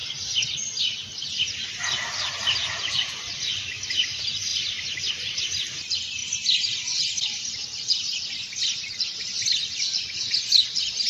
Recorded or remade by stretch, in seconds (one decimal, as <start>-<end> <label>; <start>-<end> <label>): 0.0-2.6 recorded; 2.6-3.2 remade; 3.2-11.1 recorded